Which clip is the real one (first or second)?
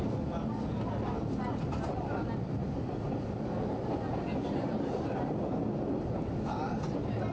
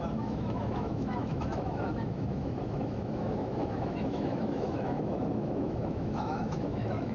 first